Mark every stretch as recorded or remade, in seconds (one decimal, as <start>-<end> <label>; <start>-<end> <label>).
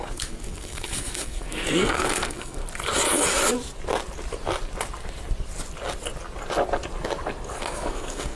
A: 0.0-2.6 remade; 2.6-7.6 recorded; 7.6-8.4 remade